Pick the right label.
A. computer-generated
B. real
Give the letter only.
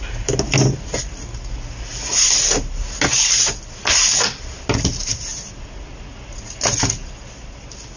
B